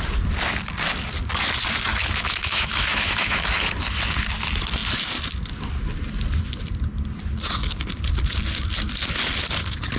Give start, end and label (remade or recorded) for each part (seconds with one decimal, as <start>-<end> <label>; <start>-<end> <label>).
0.0-1.9 recorded; 1.9-3.6 remade; 3.6-10.0 recorded